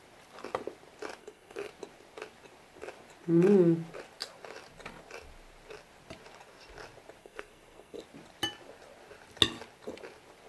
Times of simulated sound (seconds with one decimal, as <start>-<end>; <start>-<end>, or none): 1.2-1.7; 7.2-8.0